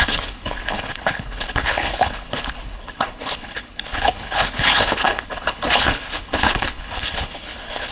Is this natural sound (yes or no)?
no